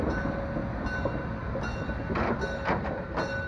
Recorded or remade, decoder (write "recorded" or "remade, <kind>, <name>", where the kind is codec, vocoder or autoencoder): recorded